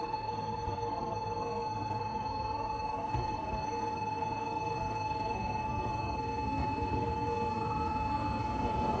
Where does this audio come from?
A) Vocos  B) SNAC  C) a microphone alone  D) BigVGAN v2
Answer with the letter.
B